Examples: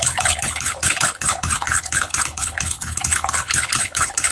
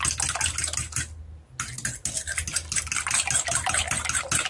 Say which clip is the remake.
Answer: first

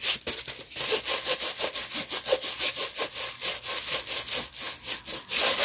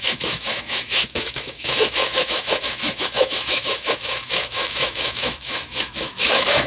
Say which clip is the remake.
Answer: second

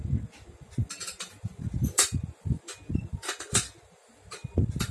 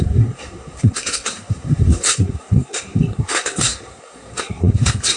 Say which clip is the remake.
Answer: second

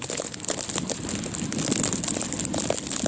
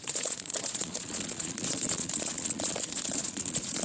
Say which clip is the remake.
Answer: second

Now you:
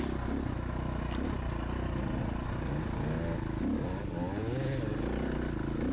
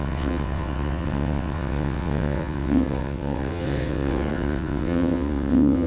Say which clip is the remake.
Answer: second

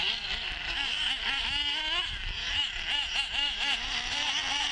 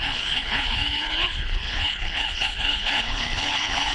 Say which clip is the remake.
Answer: second